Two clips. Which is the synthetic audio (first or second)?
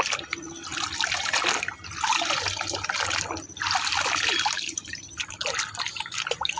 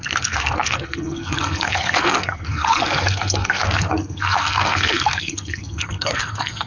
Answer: second